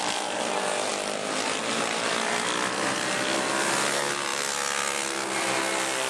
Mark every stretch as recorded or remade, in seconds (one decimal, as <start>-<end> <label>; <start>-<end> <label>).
0.0-6.1 recorded